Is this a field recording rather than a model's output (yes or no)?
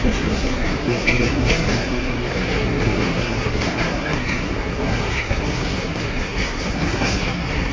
no